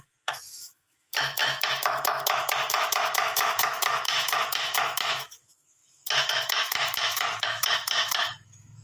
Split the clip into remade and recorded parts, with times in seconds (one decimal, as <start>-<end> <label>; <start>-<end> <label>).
0.0-8.8 remade